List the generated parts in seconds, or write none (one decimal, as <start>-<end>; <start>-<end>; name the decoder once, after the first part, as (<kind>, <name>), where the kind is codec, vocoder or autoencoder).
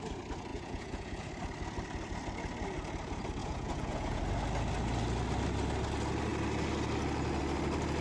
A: 0.5-1.3 (vocoder, Vocos); 3.4-4.2